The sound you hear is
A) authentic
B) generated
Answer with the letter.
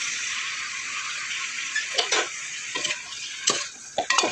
B